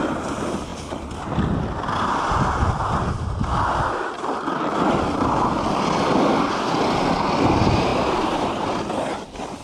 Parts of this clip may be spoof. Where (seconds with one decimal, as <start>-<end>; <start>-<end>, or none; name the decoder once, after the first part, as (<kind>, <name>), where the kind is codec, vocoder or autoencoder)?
none